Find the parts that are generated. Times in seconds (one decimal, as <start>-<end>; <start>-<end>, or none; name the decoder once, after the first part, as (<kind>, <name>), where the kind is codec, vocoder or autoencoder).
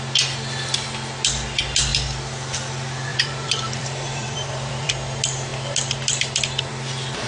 3.1-4.9 (vocoder, BigVGAN v2)